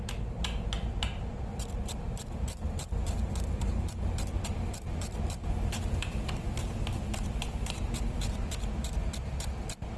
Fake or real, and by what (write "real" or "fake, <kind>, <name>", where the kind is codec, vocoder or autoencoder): fake, vocoder, BigVGAN v2